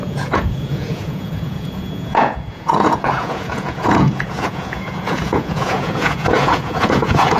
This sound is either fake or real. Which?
fake